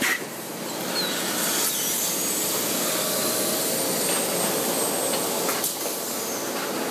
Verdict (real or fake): real